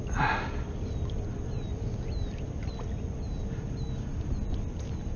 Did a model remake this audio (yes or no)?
no